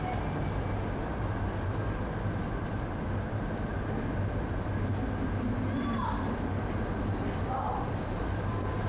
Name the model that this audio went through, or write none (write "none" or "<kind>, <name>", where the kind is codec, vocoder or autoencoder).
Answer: none